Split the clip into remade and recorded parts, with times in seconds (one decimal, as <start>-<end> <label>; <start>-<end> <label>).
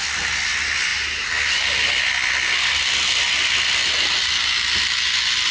0.0-5.5 recorded